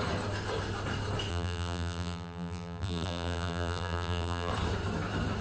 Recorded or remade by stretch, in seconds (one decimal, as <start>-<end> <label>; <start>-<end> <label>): 0.0-1.3 recorded; 1.3-4.5 remade; 4.5-5.4 recorded

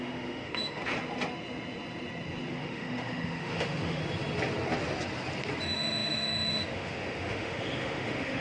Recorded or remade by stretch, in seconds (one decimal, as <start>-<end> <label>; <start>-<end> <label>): 0.0-0.8 remade; 0.8-2.5 recorded; 2.5-4.0 remade; 4.0-5.6 recorded; 5.6-8.4 remade

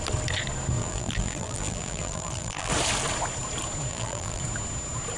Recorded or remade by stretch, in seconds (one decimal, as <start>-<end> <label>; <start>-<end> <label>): 0.0-0.8 recorded; 0.8-2.7 remade; 2.7-3.9 recorded; 3.9-4.4 remade; 4.4-5.2 recorded

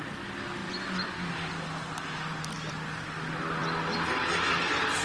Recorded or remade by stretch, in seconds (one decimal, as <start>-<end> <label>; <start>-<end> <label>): 0.0-5.0 recorded

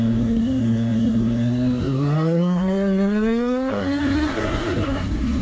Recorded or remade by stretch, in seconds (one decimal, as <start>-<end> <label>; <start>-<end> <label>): 0.0-5.4 remade

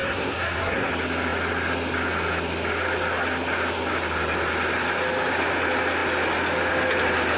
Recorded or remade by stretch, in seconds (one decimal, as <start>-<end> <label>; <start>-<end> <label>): 0.0-0.9 remade; 0.9-7.4 recorded